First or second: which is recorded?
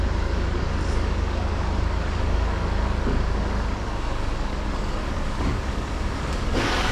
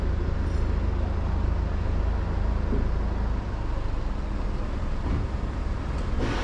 second